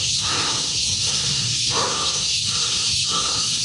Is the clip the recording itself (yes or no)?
no